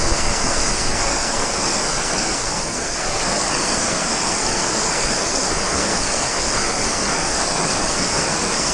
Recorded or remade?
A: remade